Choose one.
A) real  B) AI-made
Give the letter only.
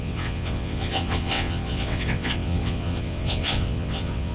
B